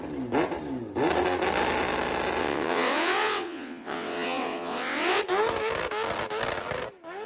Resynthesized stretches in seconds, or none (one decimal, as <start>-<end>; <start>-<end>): 2.4-5.2